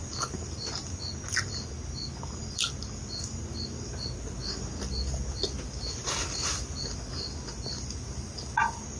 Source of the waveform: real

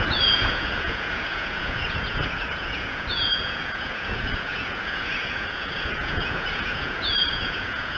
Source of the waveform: fake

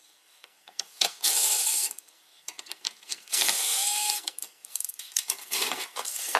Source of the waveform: fake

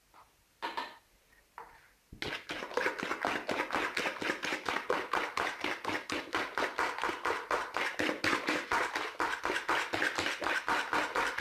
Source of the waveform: real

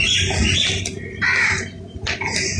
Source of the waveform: real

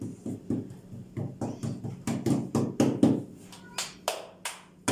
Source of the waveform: real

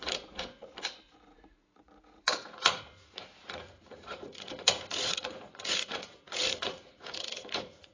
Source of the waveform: fake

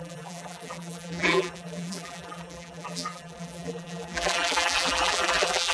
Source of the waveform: fake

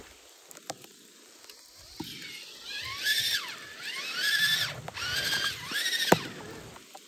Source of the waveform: real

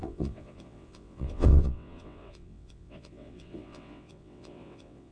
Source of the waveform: fake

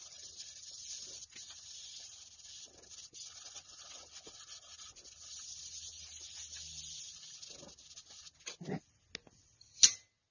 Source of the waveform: real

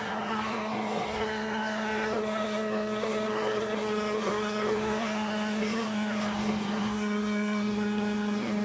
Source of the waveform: fake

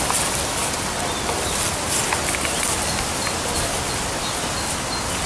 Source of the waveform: real